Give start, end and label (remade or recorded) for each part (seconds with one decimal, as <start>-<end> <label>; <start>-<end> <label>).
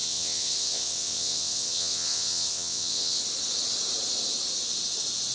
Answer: 0.0-3.2 remade; 3.2-5.3 recorded